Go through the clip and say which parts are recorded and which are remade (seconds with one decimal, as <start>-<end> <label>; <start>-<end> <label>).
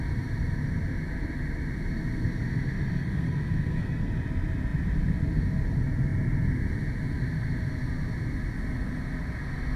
0.0-3.0 recorded; 3.0-4.1 remade; 4.1-9.8 recorded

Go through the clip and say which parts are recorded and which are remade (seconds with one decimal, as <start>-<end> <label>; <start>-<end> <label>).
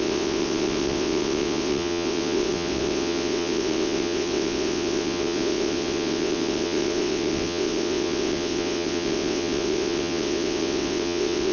0.0-11.5 remade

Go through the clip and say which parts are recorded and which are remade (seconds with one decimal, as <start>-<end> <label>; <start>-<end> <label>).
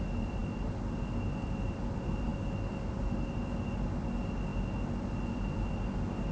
0.0-6.3 recorded